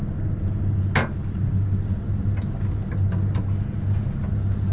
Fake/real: real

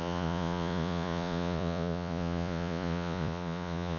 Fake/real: fake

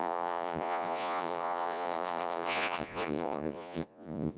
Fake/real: fake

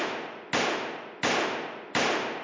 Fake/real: real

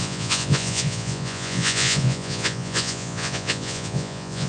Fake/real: fake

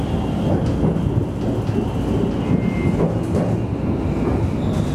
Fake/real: real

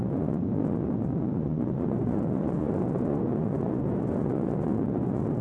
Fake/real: fake